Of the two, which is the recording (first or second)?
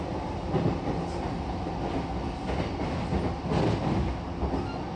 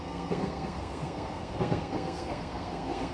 first